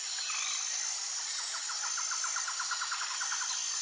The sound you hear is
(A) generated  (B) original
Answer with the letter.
B